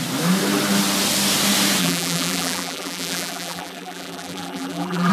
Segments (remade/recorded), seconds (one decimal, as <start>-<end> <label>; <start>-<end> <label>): 0.0-1.8 recorded; 1.8-5.1 remade